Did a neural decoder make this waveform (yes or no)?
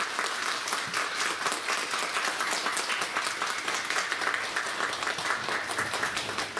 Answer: no